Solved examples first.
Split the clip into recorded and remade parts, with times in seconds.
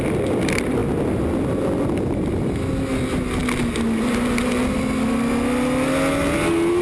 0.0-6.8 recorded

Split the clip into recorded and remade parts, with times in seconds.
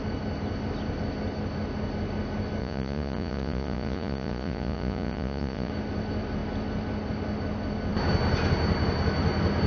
0.0-2.6 recorded; 2.6-5.7 remade; 5.7-9.7 recorded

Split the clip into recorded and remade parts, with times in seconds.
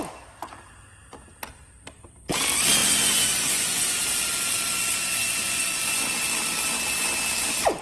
0.0-2.8 recorded; 2.8-4.0 remade; 4.0-5.2 recorded; 5.2-6.1 remade; 6.1-7.8 recorded